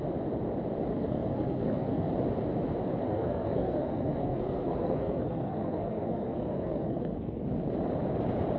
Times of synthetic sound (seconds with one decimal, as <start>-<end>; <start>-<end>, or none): 0.9-2.1; 3.0-7.4